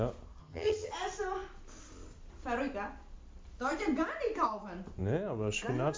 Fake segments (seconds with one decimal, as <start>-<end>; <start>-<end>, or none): 0.4-0.9